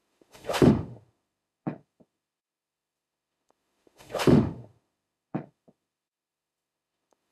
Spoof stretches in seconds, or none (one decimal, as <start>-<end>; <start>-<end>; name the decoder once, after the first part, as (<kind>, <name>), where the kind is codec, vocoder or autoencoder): 0.0-7.3 (autoencoder, DAC-VAE)